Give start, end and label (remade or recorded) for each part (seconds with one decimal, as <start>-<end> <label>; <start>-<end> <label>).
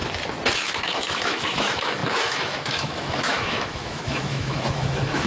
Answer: 0.0-0.6 recorded; 0.6-5.3 remade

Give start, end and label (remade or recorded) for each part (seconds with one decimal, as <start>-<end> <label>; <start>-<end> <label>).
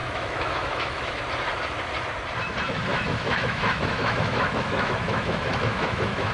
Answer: 0.0-1.2 remade; 1.2-2.9 recorded; 2.9-6.3 remade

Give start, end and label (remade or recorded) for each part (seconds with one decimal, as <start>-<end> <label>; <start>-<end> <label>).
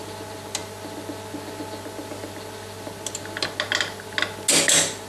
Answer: 0.0-5.1 recorded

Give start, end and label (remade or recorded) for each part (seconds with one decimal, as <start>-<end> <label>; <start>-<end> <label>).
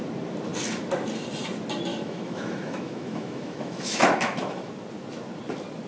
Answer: 0.0-1.9 recorded; 1.9-4.7 remade; 4.7-5.9 recorded